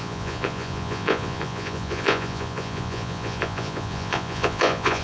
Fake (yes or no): yes